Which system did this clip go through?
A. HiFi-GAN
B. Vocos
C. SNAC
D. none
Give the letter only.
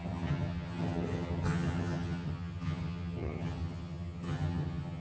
A